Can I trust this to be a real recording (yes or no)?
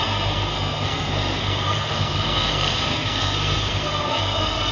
no